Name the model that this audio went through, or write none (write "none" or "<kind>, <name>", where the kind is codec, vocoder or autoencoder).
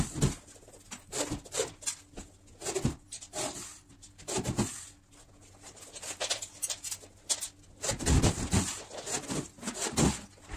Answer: none